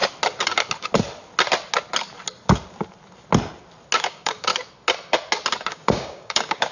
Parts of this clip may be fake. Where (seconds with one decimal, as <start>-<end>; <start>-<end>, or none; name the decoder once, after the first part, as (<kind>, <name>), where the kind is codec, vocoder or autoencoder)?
4.0-4.5 (codec, DAC); 5.7-6.7